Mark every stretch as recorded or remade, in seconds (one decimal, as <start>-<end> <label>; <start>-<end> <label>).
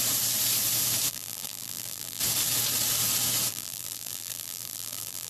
0.0-1.1 recorded; 1.1-2.2 remade; 2.2-3.5 recorded; 3.5-5.3 remade